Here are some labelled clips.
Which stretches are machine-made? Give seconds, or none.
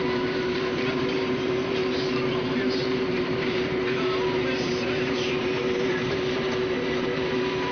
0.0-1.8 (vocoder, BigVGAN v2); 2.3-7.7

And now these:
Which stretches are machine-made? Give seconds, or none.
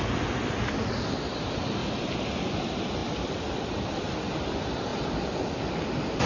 1.8-2.5 (vocoder, BigVGAN v2); 3.0-3.5; 4.9-6.3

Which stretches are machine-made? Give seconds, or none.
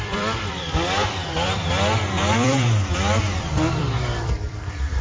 0.0-5.0 (vocoder, BigVGAN v2)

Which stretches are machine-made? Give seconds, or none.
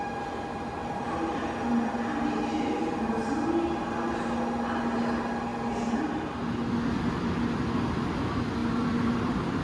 0.8-1.4 (vocoder, BigVGAN v2); 8.6-9.6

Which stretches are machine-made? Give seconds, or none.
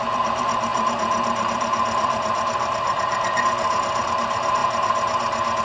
0.0-4.6 (vocoder, BigVGAN v2)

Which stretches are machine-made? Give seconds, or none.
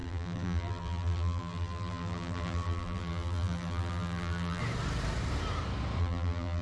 0.0-4.6 (vocoder, BigVGAN v2); 6.0-6.6